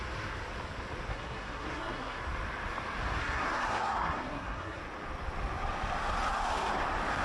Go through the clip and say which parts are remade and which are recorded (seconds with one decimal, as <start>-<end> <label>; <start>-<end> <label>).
0.0-1.1 recorded; 1.1-2.2 remade; 2.2-3.2 recorded; 3.2-4.8 remade; 4.8-7.2 recorded